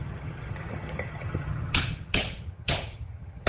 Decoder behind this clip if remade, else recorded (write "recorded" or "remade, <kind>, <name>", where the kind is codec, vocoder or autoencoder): remade, vocoder, HiFi-GAN